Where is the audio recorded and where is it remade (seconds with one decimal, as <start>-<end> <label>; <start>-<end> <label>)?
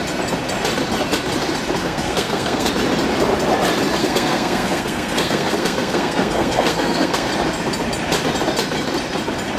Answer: 0.0-1.8 recorded; 1.8-2.7 remade; 2.7-4.0 recorded; 4.0-7.3 remade; 7.3-9.6 recorded